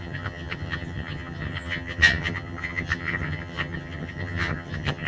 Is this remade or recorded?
remade